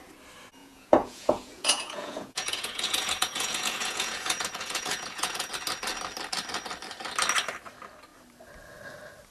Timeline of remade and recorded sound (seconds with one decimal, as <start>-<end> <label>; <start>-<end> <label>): 0.0-0.6 recorded; 0.6-5.5 remade; 5.5-9.3 recorded

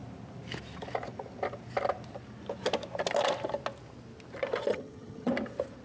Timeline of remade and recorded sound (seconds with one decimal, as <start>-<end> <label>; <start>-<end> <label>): 0.0-4.7 recorded; 4.7-5.3 remade; 5.3-5.8 recorded

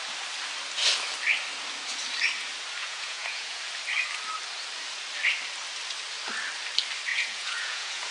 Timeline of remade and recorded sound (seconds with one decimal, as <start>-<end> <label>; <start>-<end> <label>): 0.0-2.8 recorded; 2.8-3.6 remade; 3.6-7.1 recorded; 7.1-8.1 remade

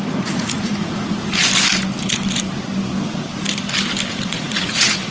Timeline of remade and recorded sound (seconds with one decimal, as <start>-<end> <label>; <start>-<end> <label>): 0.0-1.4 remade; 1.4-4.1 recorded; 4.1-5.1 remade

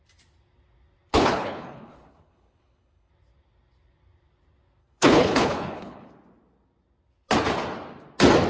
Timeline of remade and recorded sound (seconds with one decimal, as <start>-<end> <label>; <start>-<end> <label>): 0.0-1.1 recorded; 1.1-3.1 remade; 3.1-4.8 recorded; 4.8-6.1 remade; 6.1-8.5 recorded

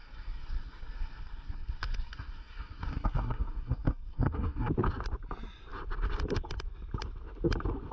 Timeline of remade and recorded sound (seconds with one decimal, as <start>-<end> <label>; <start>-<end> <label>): 0.0-4.7 remade; 4.7-7.9 recorded